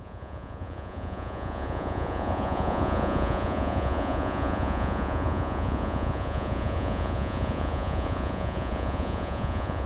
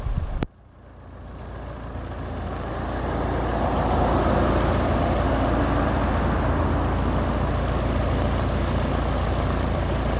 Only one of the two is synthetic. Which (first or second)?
first